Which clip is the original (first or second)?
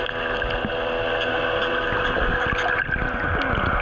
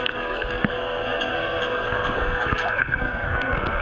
first